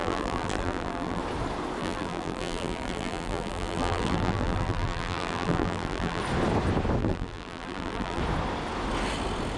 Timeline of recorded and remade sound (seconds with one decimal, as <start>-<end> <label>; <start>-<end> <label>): 0.0-1.2 remade; 1.2-1.8 recorded; 1.8-6.2 remade; 6.2-7.0 recorded; 7.0-8.2 remade; 8.2-9.6 recorded